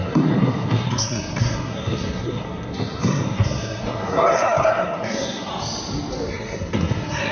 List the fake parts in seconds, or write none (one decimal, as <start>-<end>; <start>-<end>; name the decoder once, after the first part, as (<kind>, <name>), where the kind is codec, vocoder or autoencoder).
0.0-5.5 (codec, SNAC); 6.3-7.3

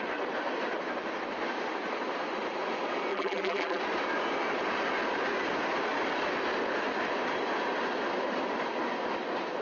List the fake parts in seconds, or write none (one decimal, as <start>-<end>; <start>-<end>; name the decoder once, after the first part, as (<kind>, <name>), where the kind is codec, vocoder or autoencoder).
3.1-3.8 (vocoder, BigVGAN v2)

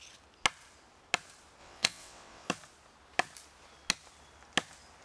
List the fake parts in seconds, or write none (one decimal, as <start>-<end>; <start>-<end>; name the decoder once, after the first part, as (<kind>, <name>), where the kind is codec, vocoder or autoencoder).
1.6-2.5 (vocoder, WaveNeXt)

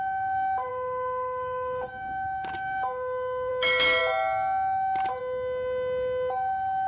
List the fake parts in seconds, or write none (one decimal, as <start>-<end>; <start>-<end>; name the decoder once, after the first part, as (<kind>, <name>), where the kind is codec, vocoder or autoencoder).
0.7-3.5 (codec, DAC)

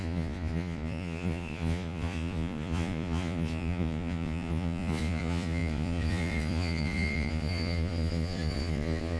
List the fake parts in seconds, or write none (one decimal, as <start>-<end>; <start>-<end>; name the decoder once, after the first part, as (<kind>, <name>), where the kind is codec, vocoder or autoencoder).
0.0-9.2 (vocoder, Vocos)

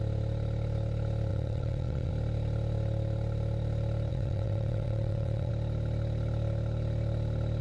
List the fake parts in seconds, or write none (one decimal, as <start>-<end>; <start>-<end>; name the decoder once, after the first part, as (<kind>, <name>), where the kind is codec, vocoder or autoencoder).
1.3-2.1 (vocoder, WaveNeXt); 4.1-5.5

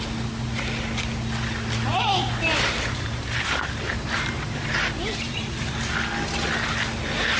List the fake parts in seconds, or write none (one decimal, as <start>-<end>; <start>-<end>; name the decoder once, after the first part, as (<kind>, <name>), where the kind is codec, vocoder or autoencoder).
1.9-5.7 (vocoder, BigVGAN v2)

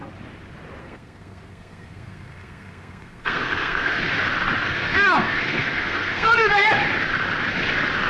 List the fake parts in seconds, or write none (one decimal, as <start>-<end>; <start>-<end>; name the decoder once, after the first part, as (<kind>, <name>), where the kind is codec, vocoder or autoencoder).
0.8-4.0 (codec, SNAC); 4.6-6.7